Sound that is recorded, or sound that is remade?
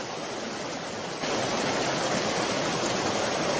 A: recorded